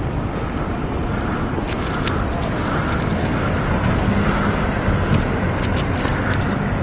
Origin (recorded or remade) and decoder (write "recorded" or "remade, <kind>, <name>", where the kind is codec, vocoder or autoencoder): recorded